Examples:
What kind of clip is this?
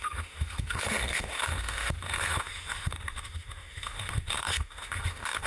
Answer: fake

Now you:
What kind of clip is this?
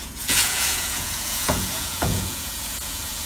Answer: fake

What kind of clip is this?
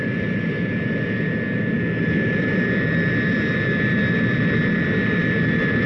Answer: fake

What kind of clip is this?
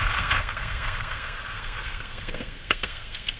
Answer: fake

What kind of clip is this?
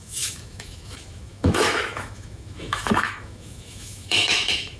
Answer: fake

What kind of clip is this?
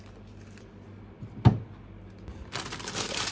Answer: real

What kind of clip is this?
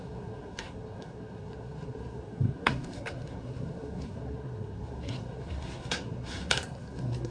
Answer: fake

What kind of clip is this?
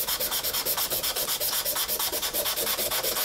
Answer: real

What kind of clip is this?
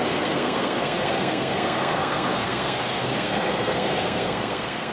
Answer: fake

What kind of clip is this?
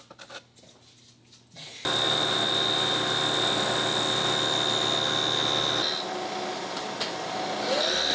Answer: real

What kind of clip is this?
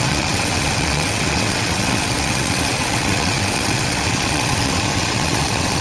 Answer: fake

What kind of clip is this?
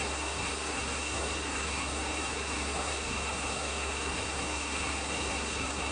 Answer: fake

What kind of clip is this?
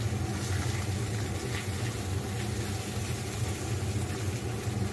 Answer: real